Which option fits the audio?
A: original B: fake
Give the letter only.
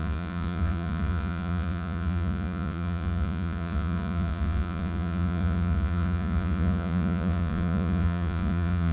B